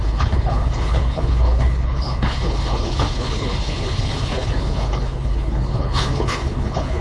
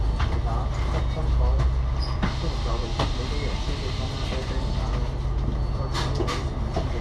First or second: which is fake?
first